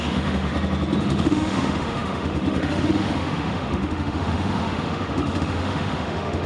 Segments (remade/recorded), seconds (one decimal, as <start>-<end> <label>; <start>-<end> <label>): 0.0-0.5 remade; 0.5-1.0 recorded; 1.0-6.5 remade